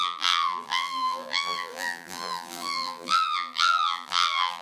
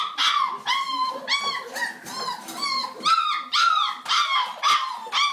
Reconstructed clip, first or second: first